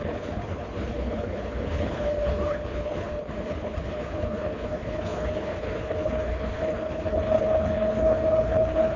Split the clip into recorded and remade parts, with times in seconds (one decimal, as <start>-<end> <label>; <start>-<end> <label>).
0.0-9.0 remade